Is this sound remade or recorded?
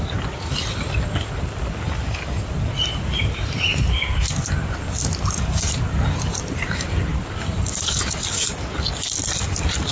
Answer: recorded